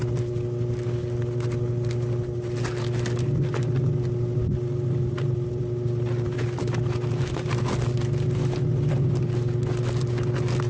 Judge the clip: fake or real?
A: real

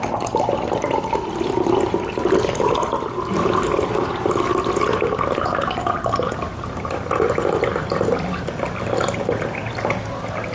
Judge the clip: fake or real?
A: real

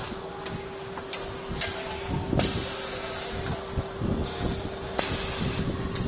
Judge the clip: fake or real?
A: real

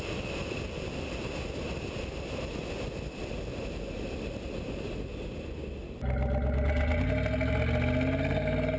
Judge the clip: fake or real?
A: real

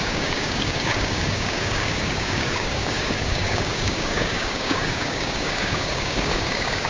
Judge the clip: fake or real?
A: fake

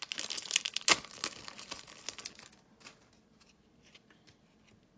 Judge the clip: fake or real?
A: real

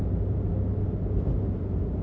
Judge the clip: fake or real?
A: real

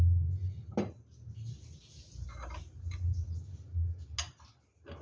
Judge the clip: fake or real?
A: real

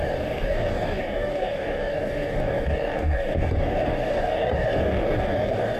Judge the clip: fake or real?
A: fake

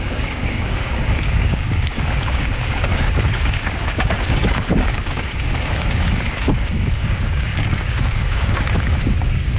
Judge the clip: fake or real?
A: fake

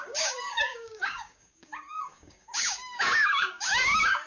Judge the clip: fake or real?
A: fake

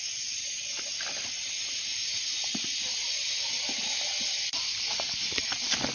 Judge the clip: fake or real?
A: real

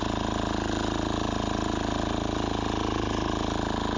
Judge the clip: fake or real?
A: real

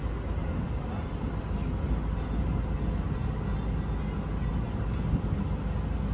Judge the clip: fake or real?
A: real